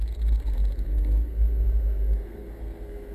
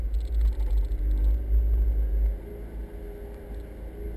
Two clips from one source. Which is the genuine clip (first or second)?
second